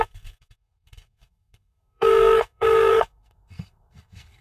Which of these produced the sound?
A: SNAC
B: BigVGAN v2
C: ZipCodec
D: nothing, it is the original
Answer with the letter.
A